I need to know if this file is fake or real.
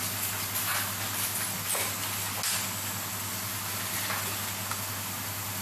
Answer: real